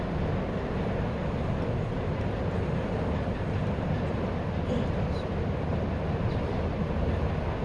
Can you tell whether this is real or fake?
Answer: fake